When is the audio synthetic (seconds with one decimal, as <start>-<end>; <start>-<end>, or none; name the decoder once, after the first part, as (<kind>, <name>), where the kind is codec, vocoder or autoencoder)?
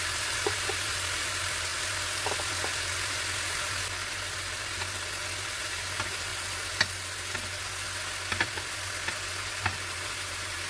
0.0-1.7 (vocoder, BigVGAN v2); 5.5-6.3; 9.3-10.7